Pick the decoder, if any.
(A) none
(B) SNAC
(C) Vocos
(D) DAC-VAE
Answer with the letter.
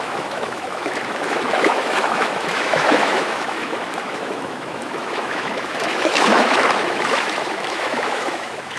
D